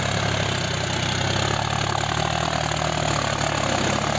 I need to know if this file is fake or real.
real